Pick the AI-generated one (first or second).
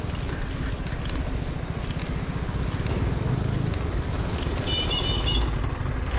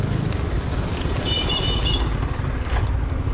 second